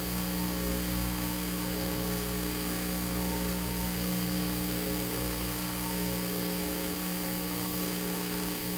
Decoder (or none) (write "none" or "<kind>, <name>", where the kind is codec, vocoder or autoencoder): codec, SNAC